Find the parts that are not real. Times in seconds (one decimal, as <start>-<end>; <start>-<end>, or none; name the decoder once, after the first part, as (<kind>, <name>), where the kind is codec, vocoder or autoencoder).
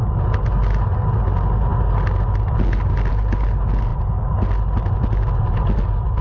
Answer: none